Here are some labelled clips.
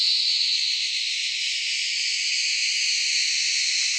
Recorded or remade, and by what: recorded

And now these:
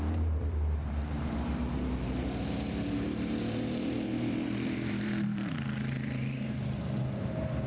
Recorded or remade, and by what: remade, vocoder, BigVGAN v2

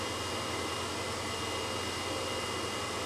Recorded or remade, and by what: recorded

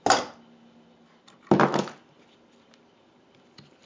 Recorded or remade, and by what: recorded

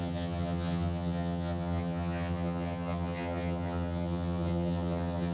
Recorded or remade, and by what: remade, vocoder, HiFi-GAN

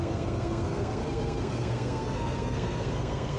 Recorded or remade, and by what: remade, codec, SNAC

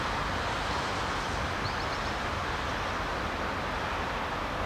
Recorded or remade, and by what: recorded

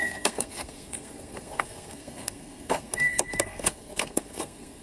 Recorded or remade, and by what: remade, codec, SNAC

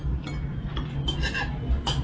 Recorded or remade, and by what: recorded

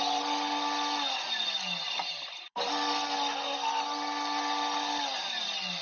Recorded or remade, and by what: recorded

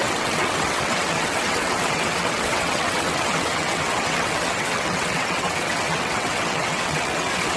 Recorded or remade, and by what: remade, vocoder, WaveNeXt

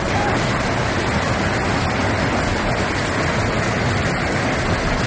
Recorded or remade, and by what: recorded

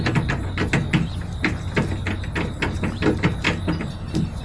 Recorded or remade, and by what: recorded